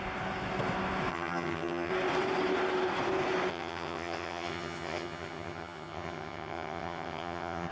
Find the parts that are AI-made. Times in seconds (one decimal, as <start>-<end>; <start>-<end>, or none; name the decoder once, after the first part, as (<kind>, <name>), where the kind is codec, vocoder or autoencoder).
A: 1.1-1.9 (vocoder, HiFi-GAN); 3.5-7.7